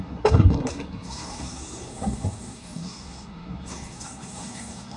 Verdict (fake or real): fake